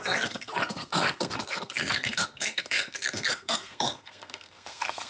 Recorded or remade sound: remade